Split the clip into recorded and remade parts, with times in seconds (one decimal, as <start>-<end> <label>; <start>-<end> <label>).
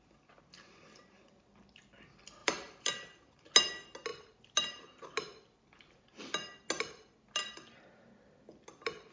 0.0-2.4 recorded; 2.4-3.5 remade; 3.5-9.1 recorded